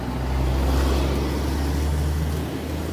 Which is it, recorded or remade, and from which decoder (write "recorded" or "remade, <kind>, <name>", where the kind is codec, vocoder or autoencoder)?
recorded